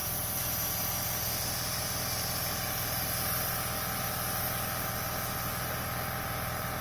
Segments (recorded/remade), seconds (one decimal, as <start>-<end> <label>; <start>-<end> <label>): 0.0-0.8 remade; 0.8-6.8 recorded